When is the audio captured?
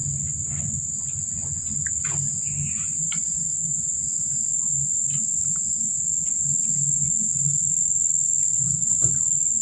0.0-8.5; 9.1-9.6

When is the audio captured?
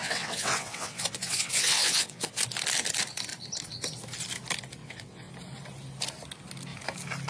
2.4-4.8; 5.3-7.3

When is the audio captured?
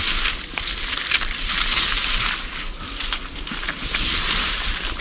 0.0-5.0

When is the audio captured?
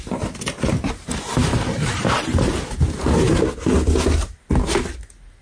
0.0-5.4